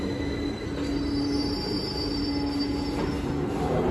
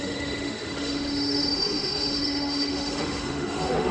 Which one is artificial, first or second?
second